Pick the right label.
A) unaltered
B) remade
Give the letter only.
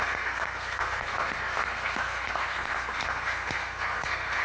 B